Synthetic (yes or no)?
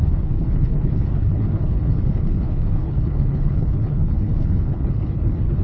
yes